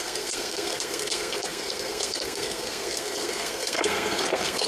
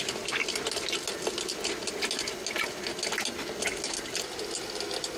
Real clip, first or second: second